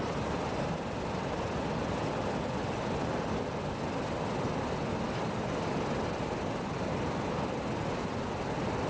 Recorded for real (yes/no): yes